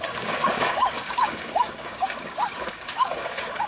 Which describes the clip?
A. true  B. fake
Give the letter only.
B